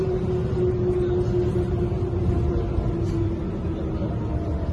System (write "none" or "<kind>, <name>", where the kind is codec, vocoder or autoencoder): none